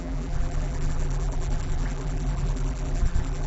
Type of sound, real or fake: fake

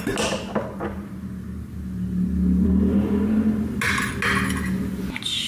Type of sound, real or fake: real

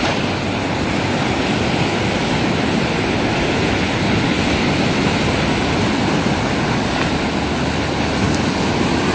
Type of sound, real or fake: real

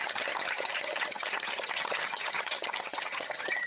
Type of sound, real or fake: fake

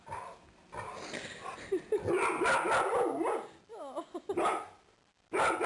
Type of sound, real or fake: real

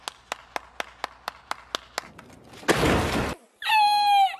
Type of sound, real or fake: real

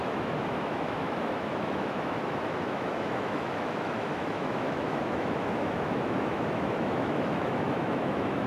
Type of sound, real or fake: fake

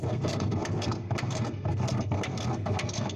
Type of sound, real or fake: fake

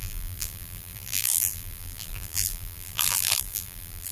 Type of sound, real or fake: fake